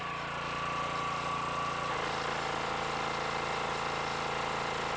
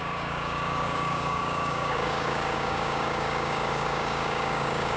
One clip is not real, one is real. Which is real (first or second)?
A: first